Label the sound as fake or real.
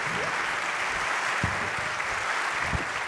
real